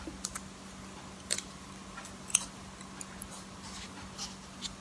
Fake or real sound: real